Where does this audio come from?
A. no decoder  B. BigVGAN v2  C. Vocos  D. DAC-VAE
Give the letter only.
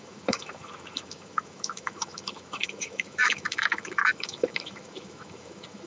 D